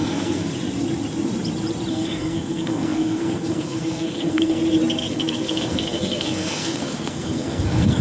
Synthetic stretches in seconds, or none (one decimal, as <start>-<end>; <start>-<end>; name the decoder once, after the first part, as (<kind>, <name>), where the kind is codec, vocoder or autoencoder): 0.0-0.5 (codec, SNAC); 1.9-4.6; 5.1-8.0